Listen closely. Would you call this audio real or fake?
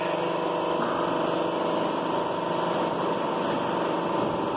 real